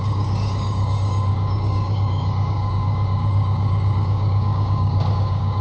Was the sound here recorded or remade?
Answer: remade